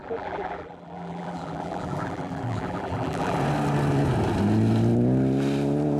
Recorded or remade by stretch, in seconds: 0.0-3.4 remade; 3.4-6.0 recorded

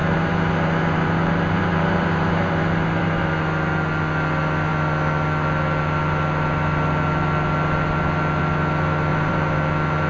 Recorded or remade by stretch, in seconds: 0.0-3.2 remade; 3.2-9.1 recorded; 9.1-9.6 remade; 9.6-10.1 recorded

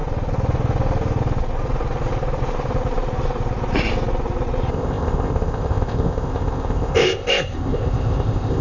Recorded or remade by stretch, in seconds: 0.0-4.7 recorded; 4.7-8.6 remade

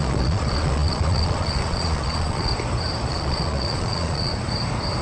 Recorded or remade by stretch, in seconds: 0.0-2.5 remade; 2.5-3.1 recorded; 3.1-4.3 remade; 4.3-5.0 recorded

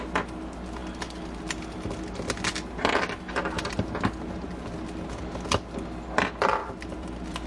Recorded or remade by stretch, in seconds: 0.0-6.6 recorded; 6.6-7.5 remade

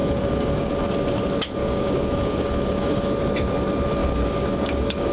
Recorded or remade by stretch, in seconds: 0.0-0.7 remade; 0.7-1.6 recorded; 1.6-2.4 remade; 2.4-4.0 recorded; 4.0-5.1 remade